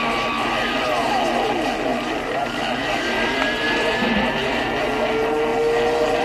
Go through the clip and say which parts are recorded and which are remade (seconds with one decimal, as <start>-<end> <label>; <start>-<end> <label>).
0.0-1.9 recorded; 1.9-4.8 remade; 4.8-6.2 recorded